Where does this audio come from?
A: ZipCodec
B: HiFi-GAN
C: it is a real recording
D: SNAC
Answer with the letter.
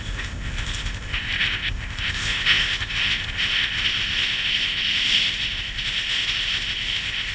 A